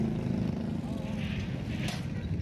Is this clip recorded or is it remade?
recorded